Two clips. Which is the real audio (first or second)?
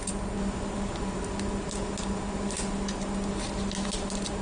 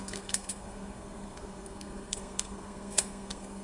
first